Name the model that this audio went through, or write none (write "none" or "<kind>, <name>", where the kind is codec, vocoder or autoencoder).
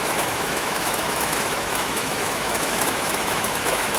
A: autoencoder, DAC-VAE